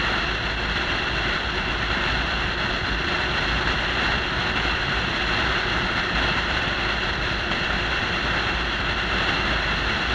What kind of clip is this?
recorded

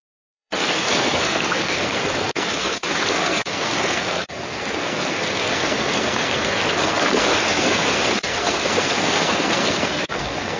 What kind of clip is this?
remade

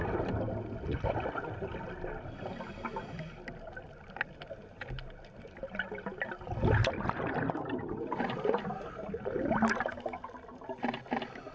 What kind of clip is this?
recorded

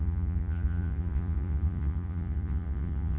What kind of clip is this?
remade